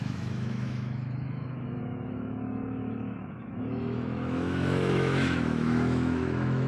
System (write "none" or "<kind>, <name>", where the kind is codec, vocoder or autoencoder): autoencoder, DAC-VAE